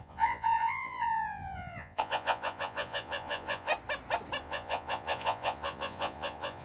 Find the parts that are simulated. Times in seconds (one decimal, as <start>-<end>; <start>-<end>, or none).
0.0-3.7; 4.4-6.6

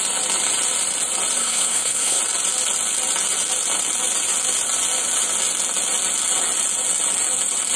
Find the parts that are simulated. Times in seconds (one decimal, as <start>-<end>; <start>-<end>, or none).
1.4-2.2

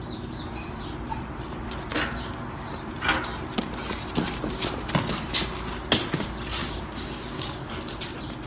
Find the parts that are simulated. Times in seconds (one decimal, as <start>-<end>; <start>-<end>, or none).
6.6-7.7

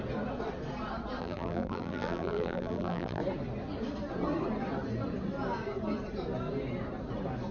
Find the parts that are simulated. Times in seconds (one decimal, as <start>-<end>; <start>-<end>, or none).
1.2-3.2

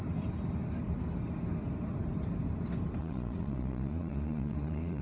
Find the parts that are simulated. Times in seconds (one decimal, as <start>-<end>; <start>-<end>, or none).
3.0-5.0

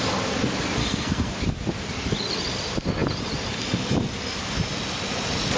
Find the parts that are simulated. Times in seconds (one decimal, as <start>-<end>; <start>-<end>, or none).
0.8-1.3

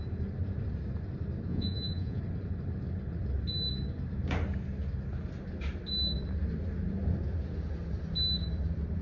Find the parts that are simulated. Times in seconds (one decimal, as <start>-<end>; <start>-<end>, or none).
1.5-2.2

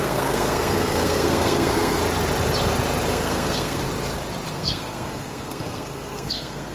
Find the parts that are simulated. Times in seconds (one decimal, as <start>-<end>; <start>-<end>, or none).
0.0-2.0; 3.1-3.8; 4.5-6.7